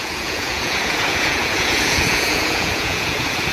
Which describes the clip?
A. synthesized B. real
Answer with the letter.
A